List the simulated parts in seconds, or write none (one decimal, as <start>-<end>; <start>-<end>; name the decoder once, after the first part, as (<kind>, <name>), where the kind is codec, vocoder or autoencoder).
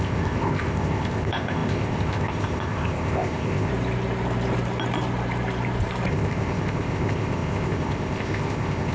0.0-3.7 (codec, ZipCodec); 6.1-8.9